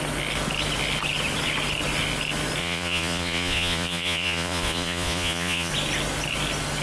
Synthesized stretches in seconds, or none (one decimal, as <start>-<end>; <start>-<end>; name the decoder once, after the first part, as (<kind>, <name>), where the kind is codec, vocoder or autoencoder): 2.6-5.7 (vocoder, Vocos)